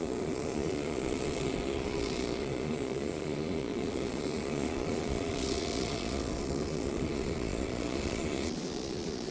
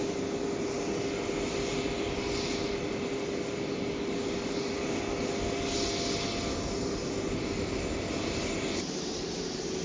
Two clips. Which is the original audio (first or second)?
second